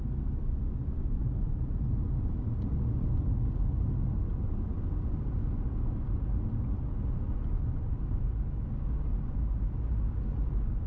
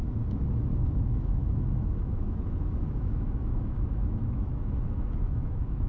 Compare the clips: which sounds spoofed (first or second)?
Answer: second